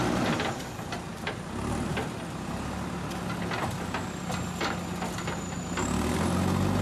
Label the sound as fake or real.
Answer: real